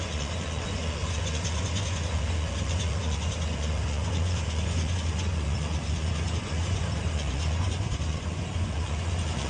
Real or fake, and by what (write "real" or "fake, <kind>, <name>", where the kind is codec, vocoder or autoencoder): fake, vocoder, Vocos